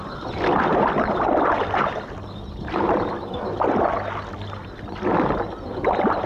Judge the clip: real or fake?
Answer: real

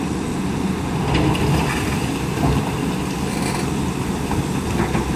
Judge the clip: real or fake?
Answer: real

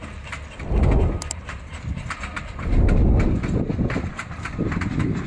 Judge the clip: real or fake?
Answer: real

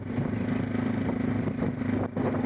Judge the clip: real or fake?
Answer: real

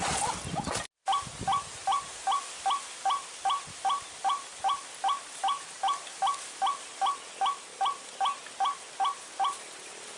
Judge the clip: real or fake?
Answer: real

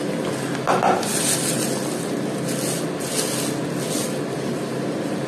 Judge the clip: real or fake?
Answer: real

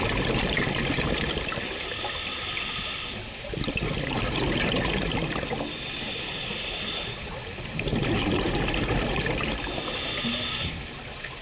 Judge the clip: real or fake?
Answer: real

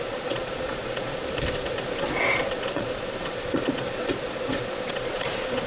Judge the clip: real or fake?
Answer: fake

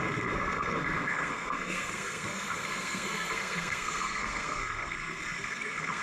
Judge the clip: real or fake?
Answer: fake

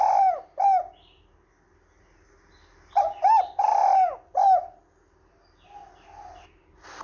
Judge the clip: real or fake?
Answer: real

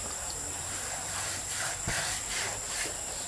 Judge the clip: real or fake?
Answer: fake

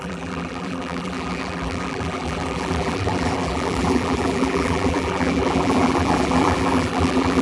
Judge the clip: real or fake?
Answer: fake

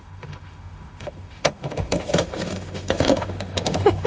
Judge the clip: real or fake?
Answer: fake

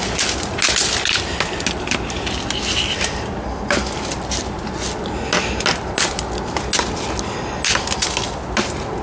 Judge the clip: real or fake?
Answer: real